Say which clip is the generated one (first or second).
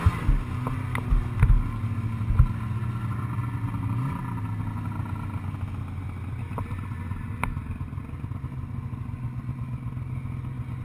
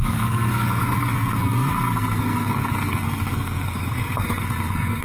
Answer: second